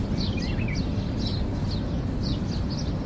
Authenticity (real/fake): real